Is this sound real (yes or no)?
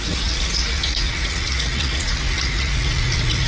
no